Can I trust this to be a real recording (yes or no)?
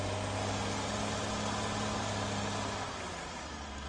yes